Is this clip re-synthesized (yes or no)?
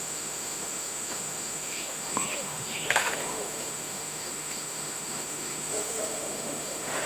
yes